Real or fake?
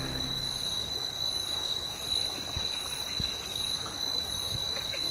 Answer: fake